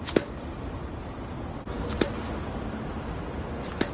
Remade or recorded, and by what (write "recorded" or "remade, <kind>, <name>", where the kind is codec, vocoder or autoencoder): recorded